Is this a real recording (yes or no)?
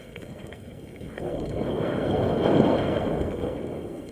no